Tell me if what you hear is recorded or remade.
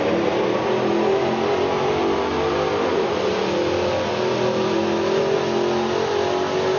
recorded